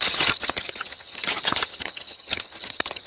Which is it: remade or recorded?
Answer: remade